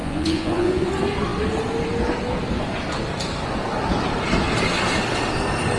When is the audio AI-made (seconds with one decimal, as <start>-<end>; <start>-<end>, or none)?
0.0-0.9

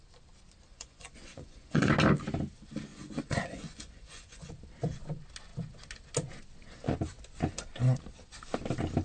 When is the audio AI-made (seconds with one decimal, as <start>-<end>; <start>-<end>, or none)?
0.7-1.9; 2.9-4.5

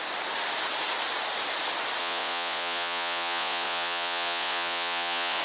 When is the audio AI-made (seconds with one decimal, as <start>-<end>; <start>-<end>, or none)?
2.0-5.4

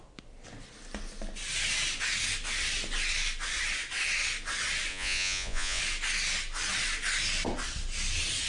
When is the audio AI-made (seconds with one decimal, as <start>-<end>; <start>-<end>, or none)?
4.9-5.8